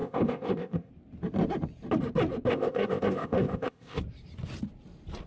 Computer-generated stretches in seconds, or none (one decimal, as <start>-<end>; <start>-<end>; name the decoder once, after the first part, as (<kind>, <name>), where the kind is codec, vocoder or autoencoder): 0.0-0.9 (codec, ZipCodec); 2.5-4.0